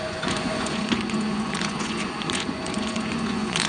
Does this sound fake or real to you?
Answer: fake